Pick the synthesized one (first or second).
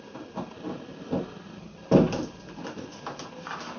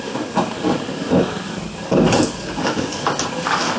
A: second